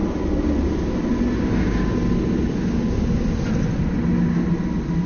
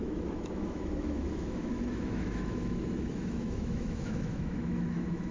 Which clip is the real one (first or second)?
first